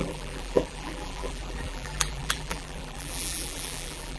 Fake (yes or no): yes